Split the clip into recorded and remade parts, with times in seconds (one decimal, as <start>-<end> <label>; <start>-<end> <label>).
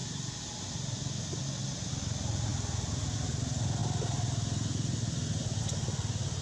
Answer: 0.0-6.4 recorded